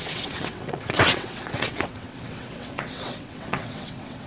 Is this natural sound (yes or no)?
no